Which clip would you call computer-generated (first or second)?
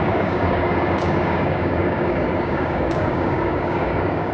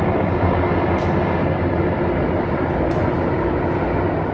first